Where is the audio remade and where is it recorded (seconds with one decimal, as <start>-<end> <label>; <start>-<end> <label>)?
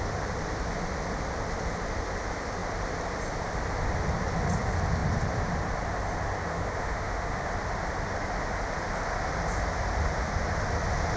0.0-6.5 recorded; 6.5-7.5 remade; 7.5-11.2 recorded